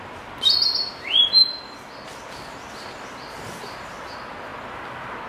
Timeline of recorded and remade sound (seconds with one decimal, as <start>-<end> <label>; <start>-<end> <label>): 0.0-5.3 recorded